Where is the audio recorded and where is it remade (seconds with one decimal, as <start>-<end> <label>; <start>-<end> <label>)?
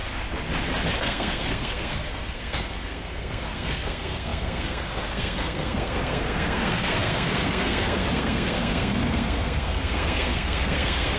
0.0-1.0 recorded; 1.0-11.2 remade